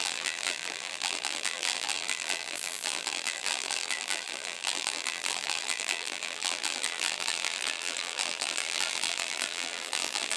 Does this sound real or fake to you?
fake